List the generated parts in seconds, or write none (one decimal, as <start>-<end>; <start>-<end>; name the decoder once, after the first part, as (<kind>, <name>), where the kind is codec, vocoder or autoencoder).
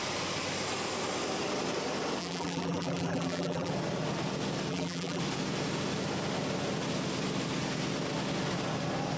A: 2.2-3.7 (vocoder, BigVGAN v2); 4.7-5.2